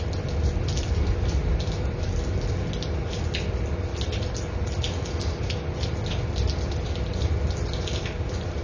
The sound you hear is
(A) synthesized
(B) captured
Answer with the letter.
B